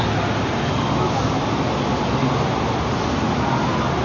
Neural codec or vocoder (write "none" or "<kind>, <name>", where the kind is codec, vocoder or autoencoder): none